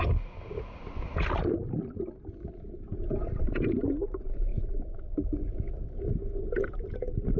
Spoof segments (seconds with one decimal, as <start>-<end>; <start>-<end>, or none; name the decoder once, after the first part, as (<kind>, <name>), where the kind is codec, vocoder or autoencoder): none